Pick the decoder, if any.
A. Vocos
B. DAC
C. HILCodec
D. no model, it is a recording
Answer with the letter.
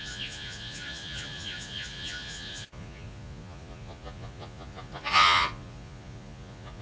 A